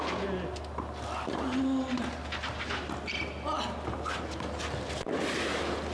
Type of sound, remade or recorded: recorded